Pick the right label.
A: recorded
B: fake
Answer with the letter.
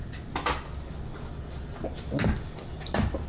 A